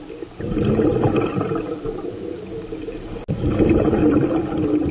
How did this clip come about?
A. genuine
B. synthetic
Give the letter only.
A